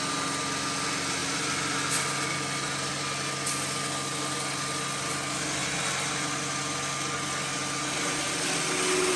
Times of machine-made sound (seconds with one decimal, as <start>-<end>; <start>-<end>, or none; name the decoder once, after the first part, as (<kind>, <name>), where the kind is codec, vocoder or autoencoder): none